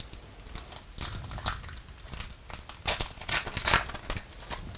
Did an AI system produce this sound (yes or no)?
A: no